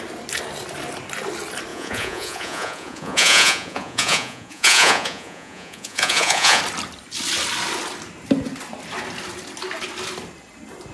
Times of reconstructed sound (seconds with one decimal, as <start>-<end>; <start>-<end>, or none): 1.7-6.6

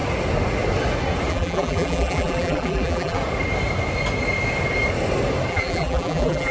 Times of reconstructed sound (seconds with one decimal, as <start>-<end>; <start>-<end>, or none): 1.3-3.2; 5.5-6.5

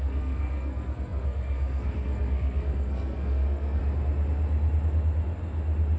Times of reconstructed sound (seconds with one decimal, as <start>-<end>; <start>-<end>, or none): 0.0-3.8

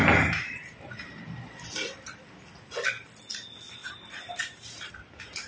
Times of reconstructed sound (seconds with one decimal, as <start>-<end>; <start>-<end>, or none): 0.0-2.1; 3.8-4.9